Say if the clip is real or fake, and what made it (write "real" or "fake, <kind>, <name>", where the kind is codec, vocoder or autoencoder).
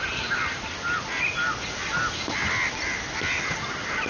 real